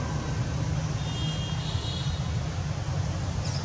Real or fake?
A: real